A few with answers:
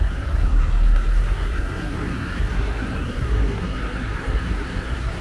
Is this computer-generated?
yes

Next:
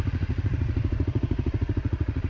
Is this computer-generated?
yes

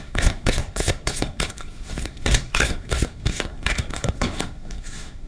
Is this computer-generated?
yes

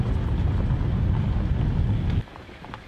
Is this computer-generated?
no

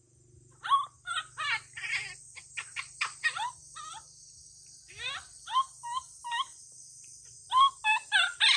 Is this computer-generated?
no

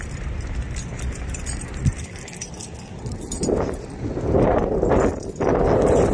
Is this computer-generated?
no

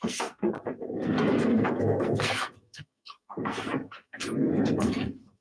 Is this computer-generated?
yes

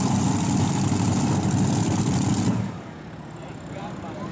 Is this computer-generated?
no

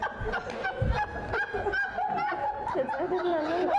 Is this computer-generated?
no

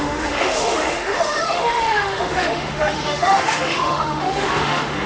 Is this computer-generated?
yes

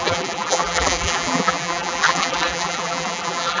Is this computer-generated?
yes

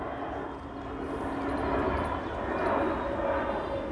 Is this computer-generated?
no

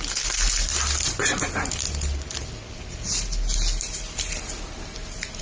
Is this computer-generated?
no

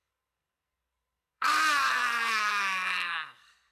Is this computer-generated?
yes